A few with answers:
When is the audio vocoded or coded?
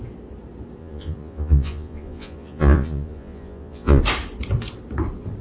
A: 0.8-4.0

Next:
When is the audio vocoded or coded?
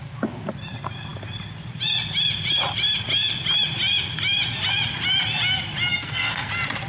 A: 5.9-6.5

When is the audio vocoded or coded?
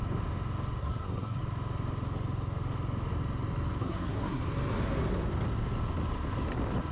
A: 0.8-1.4; 3.8-4.4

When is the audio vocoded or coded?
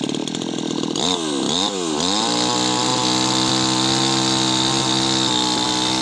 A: none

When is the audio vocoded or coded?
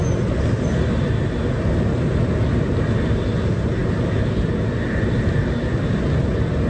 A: none